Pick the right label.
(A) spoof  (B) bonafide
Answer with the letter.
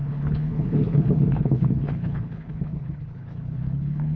A